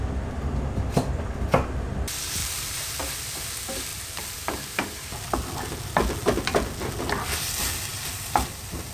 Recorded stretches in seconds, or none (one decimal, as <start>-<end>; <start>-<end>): 0.0-2.4; 3.0-3.9; 5.1-7.9